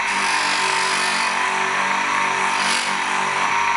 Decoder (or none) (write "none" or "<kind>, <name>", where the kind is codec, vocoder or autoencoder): none